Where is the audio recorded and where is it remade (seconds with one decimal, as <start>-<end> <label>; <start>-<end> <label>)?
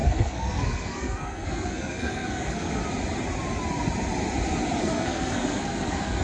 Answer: 0.0-2.8 remade; 2.8-4.8 recorded; 4.8-6.2 remade